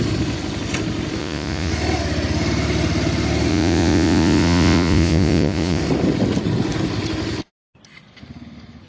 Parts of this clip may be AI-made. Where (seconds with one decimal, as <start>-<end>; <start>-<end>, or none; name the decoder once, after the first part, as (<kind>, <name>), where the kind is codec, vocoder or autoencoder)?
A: 1.2-1.7 (vocoder, Vocos); 3.5-5.8

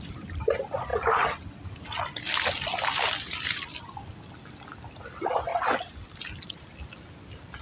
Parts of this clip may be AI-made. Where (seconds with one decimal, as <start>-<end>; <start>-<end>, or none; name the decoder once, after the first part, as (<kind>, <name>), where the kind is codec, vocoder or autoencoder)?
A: none

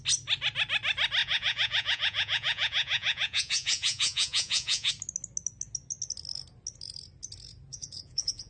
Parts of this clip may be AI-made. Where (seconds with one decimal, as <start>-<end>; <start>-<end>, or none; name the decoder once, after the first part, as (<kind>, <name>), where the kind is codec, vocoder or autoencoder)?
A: 1.2-4.9 (vocoder, Vocos); 7.7-8.5

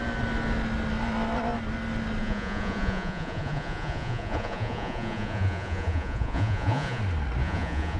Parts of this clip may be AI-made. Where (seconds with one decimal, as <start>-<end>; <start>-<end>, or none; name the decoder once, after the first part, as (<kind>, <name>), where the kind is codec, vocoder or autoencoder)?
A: 2.2-7.0 (vocoder, Vocos); 7.4-8.0

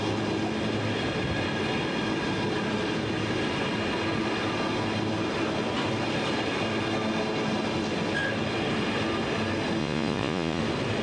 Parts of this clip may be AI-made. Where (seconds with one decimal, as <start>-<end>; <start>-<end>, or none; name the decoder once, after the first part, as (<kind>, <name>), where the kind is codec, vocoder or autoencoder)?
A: 9.8-10.6 (vocoder, Vocos)

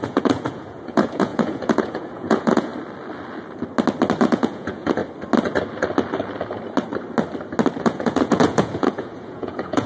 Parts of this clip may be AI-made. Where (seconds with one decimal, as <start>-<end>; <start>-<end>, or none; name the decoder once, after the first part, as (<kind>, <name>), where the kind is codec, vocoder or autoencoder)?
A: 0.0-2.7 (vocoder, Vocos); 4.2-5.0; 7.8-9.9